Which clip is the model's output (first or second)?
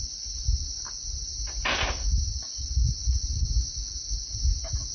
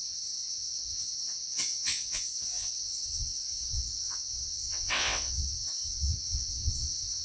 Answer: second